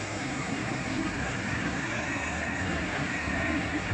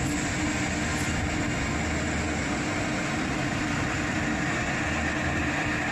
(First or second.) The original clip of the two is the second